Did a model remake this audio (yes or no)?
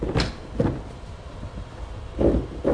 no